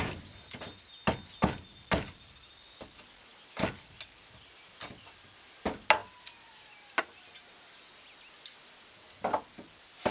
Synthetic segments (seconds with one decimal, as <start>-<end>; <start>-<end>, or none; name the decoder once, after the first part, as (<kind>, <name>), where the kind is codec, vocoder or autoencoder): none